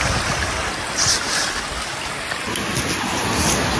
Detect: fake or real real